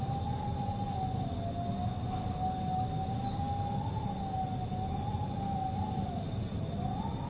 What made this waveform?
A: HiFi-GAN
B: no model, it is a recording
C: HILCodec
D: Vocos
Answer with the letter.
B